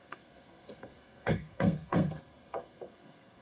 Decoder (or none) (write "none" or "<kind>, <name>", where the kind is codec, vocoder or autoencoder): codec, SNAC